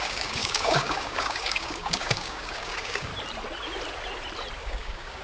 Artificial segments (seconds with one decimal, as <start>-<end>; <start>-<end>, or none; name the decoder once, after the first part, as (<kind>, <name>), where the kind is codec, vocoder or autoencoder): 0.0-3.1 (codec, DAC); 4.6-5.2